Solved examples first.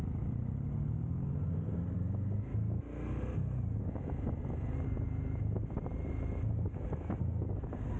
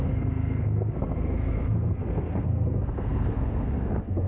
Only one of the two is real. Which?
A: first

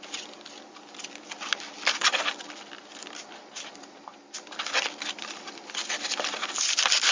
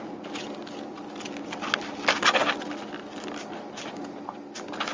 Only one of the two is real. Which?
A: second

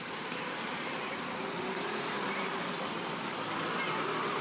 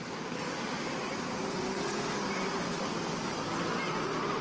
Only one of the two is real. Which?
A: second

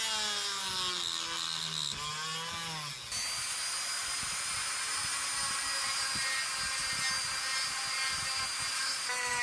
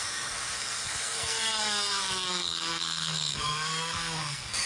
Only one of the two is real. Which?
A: first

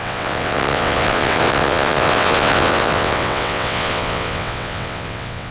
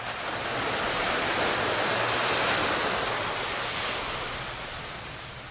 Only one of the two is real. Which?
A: second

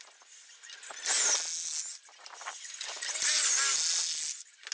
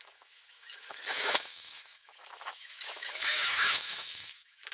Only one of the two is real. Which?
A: first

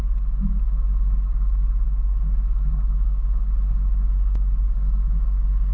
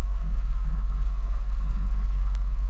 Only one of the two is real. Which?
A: first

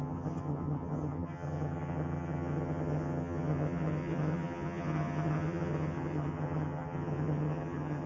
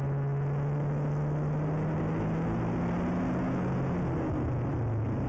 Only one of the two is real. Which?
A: second